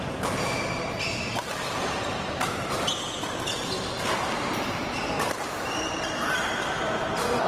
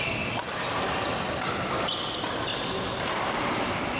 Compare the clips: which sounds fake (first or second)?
first